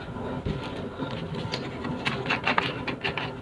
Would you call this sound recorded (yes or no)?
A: yes